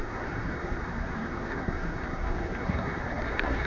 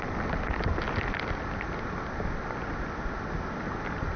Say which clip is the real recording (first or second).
second